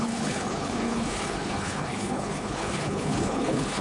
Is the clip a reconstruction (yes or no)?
yes